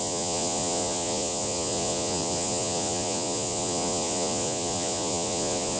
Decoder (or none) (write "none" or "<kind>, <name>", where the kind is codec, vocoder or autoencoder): vocoder, Vocos